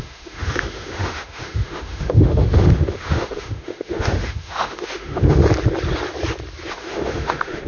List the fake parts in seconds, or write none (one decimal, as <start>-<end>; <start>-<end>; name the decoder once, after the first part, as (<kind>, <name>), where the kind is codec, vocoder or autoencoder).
0.0-5.4 (autoencoder, DAC-VAE); 6.7-7.7